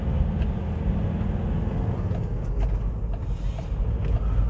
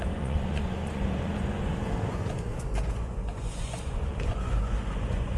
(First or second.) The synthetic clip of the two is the second